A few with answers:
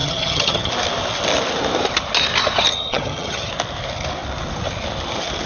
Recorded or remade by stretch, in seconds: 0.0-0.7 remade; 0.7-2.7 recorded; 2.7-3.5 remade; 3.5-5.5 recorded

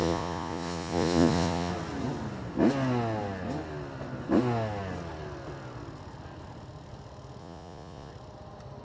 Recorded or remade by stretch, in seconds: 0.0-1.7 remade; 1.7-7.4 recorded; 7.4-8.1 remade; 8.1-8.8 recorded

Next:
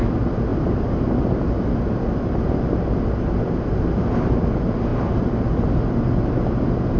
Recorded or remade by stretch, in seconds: 0.0-7.0 recorded

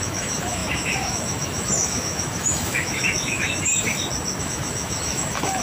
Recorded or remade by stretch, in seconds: 0.0-3.7 remade; 3.7-4.4 recorded; 4.4-5.6 remade

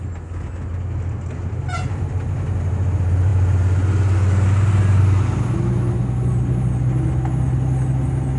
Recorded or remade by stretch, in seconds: 0.0-8.4 recorded

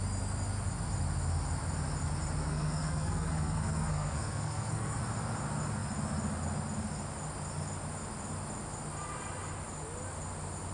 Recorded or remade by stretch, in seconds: 0.0-2.4 recorded; 2.4-5.0 remade; 5.0-10.7 recorded

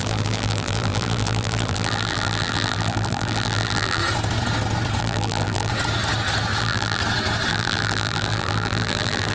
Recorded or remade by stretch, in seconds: 0.0-4.0 remade; 4.0-5.0 recorded; 5.0-5.7 remade; 5.7-6.6 recorded; 6.6-7.0 remade; 7.0-7.5 recorded; 7.5-9.3 remade